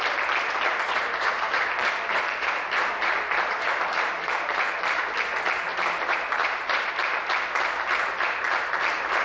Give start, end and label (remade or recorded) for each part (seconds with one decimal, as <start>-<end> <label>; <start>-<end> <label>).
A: 0.0-0.7 recorded; 0.7-5.0 remade; 5.0-5.7 recorded; 5.7-6.9 remade; 6.9-9.2 recorded